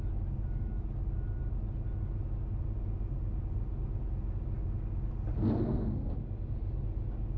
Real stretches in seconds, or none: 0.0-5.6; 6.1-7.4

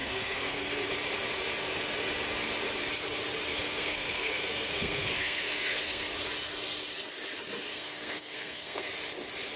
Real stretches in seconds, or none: 0.9-3.5; 6.0-7.7; 8.9-9.6

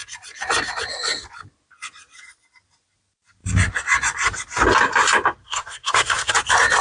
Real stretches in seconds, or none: 0.0-5.4; 6.3-6.8